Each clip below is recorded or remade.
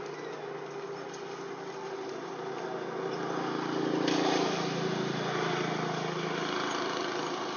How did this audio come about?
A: recorded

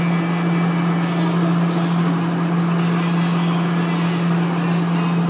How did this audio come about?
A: recorded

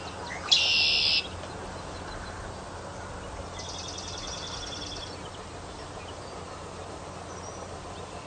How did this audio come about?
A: recorded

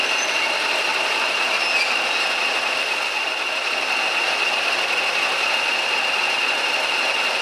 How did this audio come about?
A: recorded